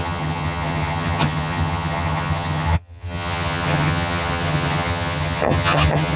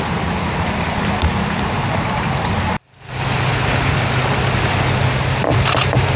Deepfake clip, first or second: first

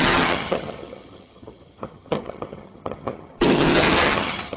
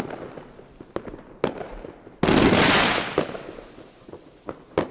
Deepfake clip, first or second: first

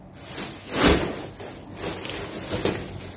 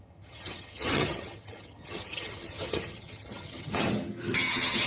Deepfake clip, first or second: second